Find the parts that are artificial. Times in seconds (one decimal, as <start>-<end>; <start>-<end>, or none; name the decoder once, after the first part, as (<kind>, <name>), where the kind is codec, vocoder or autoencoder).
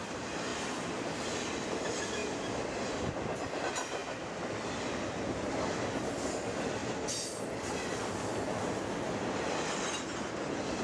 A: none